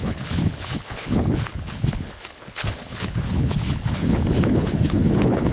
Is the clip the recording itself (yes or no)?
no